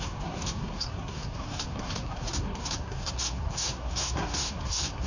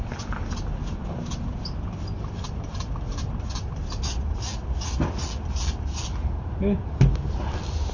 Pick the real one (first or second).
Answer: second